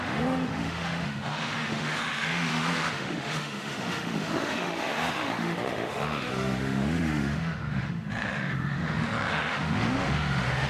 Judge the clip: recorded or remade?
remade